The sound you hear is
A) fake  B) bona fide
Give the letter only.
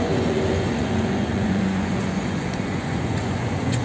A